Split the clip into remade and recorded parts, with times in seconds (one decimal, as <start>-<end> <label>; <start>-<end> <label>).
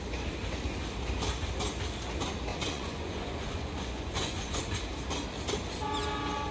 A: 0.0-2.5 recorded; 2.5-4.6 remade; 4.6-6.5 recorded